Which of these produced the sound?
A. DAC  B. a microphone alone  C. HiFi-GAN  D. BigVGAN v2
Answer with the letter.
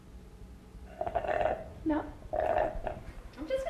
B